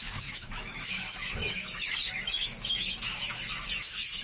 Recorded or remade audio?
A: remade